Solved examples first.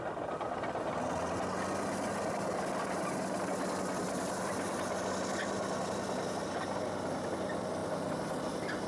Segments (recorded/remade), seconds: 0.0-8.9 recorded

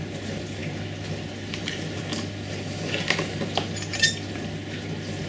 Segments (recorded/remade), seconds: 0.0-5.3 recorded

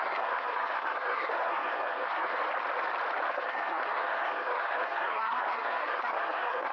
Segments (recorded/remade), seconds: 0.0-2.4 remade; 2.4-3.3 recorded; 3.3-6.7 remade